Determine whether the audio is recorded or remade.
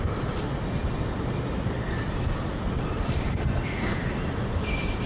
recorded